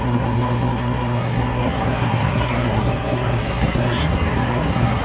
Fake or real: fake